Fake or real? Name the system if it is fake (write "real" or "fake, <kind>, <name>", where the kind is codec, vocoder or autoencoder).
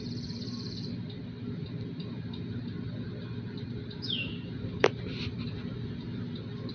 real